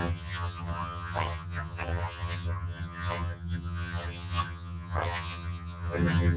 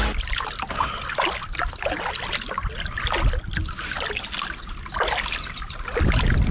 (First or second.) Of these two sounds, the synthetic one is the first